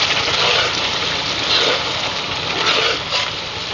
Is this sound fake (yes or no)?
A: no